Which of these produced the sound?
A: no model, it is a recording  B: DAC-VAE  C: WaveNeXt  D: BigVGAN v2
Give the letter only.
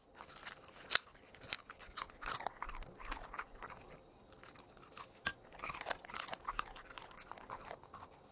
A